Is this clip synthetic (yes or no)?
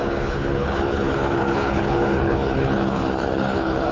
yes